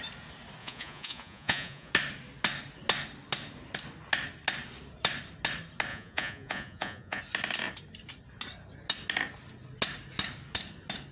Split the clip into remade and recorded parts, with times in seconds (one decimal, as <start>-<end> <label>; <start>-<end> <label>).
0.0-0.6 recorded; 0.6-1.9 remade; 1.9-5.9 recorded; 5.9-7.2 remade; 7.2-11.1 recorded

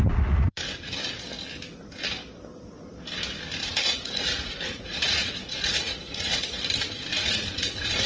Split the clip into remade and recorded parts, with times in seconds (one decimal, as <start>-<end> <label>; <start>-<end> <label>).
0.0-0.9 remade; 0.9-3.6 recorded; 3.6-6.6 remade; 6.6-7.1 recorded; 7.1-8.1 remade

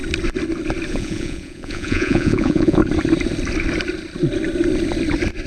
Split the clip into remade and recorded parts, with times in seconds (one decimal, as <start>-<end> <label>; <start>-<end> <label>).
0.0-0.9 recorded; 0.9-2.8 remade; 2.8-5.5 recorded